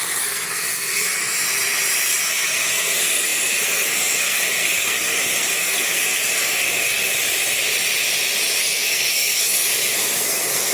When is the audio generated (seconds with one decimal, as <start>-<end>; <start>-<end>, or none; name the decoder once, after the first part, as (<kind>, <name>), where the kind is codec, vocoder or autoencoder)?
0.0-1.2 (codec, SNAC); 2.2-7.1; 8.6-10.7